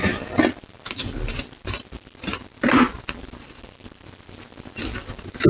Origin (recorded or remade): recorded